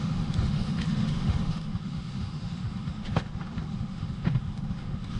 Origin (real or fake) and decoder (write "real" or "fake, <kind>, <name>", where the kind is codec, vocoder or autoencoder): fake, autoencoder, DAC-VAE